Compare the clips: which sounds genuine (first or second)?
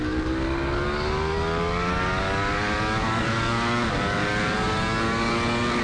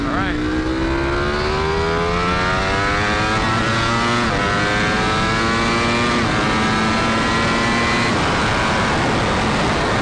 second